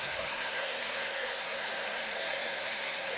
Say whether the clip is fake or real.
fake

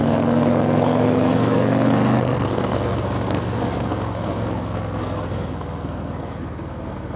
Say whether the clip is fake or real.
fake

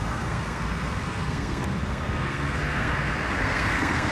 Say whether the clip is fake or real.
fake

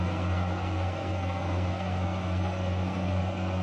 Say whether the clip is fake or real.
fake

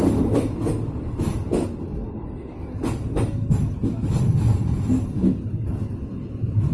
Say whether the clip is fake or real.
real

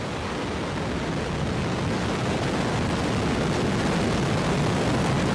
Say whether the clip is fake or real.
real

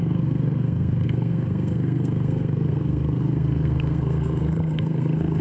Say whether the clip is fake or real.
fake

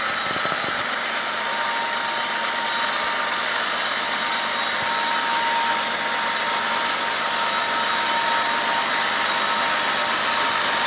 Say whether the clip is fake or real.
real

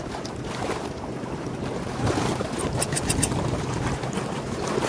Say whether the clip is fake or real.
real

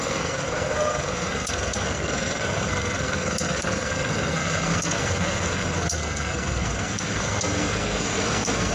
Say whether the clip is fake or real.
fake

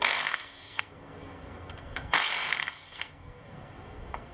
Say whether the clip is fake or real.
fake